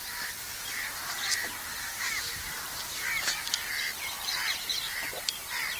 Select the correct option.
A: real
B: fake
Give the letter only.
A